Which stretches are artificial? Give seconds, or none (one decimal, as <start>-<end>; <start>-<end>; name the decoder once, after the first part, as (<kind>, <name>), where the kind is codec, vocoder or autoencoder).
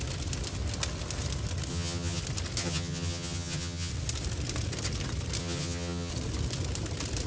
1.7-2.2 (vocoder, HiFi-GAN); 2.6-3.9; 5.4-6.1